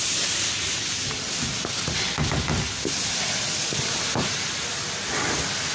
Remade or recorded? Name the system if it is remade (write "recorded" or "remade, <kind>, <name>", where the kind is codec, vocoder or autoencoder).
recorded